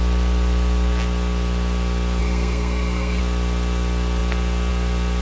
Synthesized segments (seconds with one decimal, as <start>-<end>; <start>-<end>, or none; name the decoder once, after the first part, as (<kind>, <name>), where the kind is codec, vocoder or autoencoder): 2.2-3.2 (codec, SNAC)